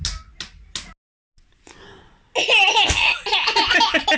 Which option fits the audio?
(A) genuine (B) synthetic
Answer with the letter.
A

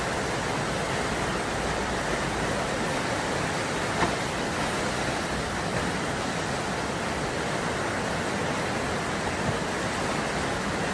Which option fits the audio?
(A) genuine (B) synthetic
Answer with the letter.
A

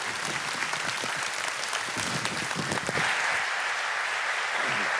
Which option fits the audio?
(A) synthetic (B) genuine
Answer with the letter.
B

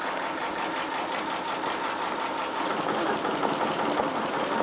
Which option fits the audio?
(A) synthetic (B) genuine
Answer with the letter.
B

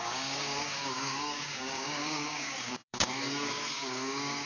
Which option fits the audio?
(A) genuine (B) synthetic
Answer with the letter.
B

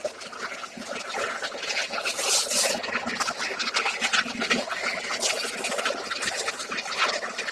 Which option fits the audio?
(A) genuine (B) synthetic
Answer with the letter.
A